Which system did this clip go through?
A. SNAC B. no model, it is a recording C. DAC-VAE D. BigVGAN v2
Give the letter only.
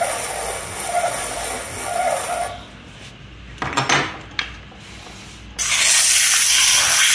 B